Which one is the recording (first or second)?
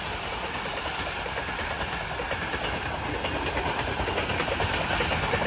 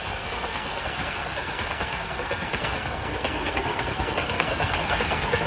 first